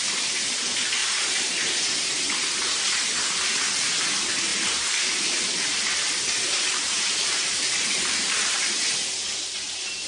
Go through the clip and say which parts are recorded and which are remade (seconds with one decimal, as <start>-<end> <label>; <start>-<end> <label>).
0.0-1.0 recorded; 1.0-1.8 remade; 1.8-4.5 recorded; 4.5-9.2 remade; 9.2-10.1 recorded